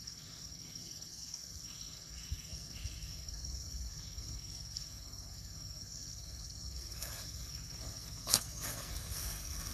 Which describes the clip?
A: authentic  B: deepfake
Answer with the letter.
B